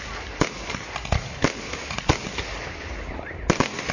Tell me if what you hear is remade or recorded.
recorded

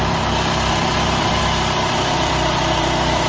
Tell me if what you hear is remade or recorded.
remade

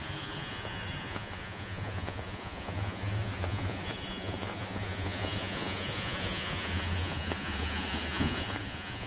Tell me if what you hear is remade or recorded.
remade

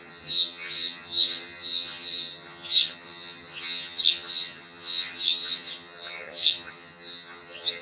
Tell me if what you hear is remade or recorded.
remade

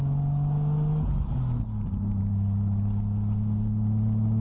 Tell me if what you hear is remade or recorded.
recorded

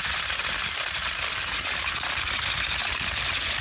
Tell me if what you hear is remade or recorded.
recorded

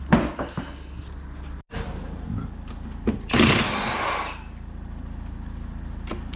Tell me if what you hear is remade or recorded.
recorded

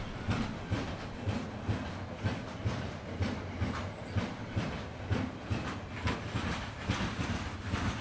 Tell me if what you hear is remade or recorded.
recorded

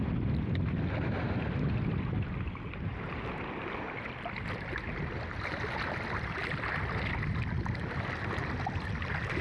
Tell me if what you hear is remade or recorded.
recorded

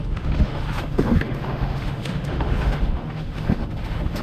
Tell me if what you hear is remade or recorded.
remade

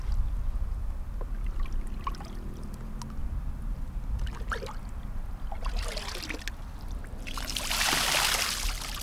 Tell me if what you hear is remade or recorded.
recorded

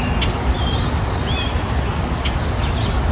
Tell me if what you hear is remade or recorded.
recorded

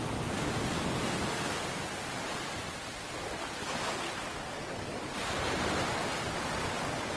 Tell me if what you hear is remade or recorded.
recorded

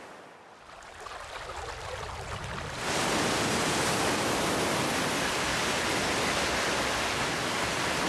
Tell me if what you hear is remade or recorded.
recorded